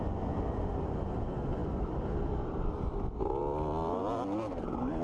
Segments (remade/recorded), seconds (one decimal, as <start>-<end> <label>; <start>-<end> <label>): 0.0-0.6 remade; 0.6-1.6 recorded; 1.6-2.9 remade; 2.9-3.4 recorded; 3.4-4.0 remade; 4.0-5.0 recorded